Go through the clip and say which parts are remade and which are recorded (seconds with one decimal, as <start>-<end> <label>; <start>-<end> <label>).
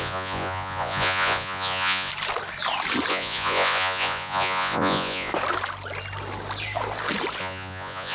0.0-2.1 remade; 2.1-3.1 recorded; 3.1-5.3 remade; 5.3-7.4 recorded; 7.4-8.1 remade